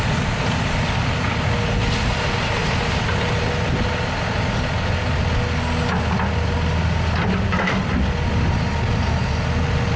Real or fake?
real